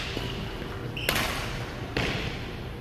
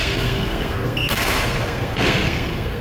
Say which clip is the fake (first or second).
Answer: second